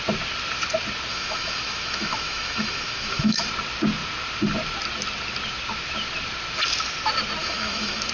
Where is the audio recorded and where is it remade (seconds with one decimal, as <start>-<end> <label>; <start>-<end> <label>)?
0.0-1.1 recorded; 1.1-3.5 remade; 3.5-7.4 recorded; 7.4-8.1 remade